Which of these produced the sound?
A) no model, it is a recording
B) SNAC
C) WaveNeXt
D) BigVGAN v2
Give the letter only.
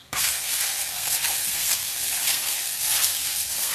B